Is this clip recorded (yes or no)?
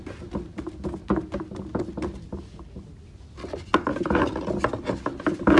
yes